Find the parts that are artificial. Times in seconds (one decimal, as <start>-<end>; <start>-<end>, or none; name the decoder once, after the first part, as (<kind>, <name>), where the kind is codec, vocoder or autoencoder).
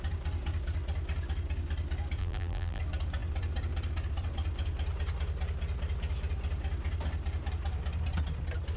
2.2-2.8 (vocoder, BigVGAN v2)